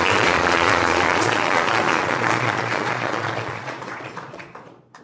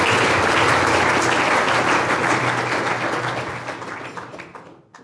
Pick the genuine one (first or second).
second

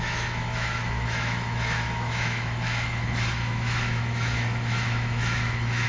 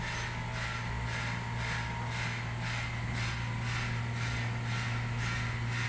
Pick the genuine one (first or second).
second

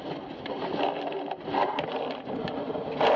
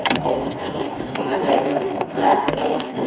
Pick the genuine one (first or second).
first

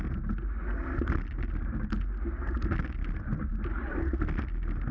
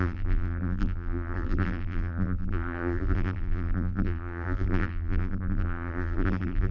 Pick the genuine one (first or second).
first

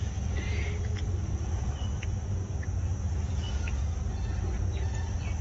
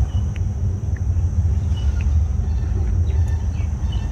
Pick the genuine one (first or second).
second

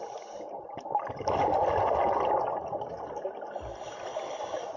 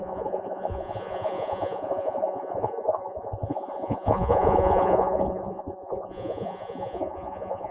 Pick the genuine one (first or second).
first